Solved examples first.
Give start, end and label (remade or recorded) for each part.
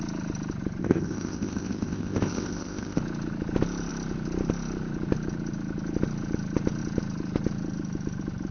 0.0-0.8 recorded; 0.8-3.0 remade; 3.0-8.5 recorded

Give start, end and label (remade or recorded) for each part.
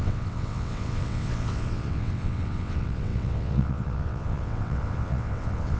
0.0-5.8 remade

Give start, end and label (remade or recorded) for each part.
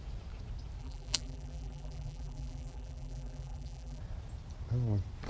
0.0-0.8 recorded; 0.8-4.0 remade; 4.0-5.3 recorded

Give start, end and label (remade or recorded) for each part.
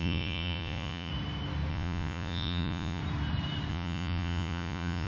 0.0-1.1 remade; 1.1-1.7 recorded; 1.7-3.0 remade; 3.0-3.7 recorded; 3.7-5.1 remade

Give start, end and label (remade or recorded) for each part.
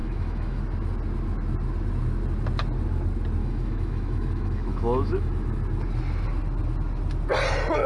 0.0-0.6 remade; 0.6-3.4 recorded; 3.4-5.3 remade; 5.3-7.9 recorded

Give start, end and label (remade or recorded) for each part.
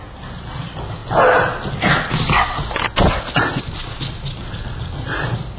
0.0-5.6 recorded